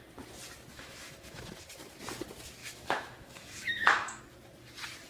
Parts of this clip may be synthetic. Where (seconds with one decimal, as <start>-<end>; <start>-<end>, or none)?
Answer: 0.7-1.5; 2.6-4.2